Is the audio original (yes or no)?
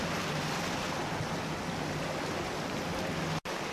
yes